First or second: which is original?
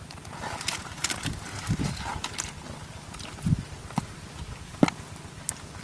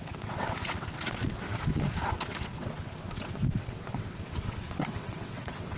first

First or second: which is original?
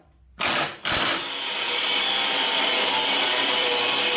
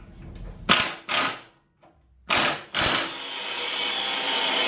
second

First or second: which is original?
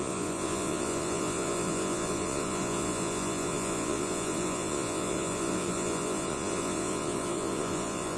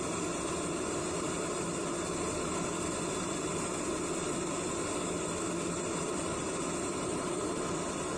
second